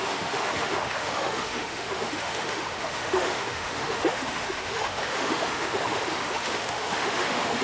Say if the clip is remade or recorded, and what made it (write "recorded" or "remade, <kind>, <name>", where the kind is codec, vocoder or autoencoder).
remade, autoencoder, DAC-VAE